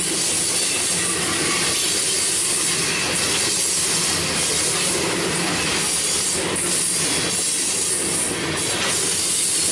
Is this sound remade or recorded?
recorded